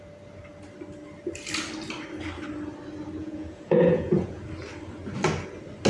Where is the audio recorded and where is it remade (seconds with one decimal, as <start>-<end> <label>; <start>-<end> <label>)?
0.0-3.2 recorded; 3.2-4.4 remade; 4.4-5.9 recorded